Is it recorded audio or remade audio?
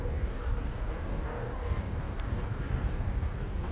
remade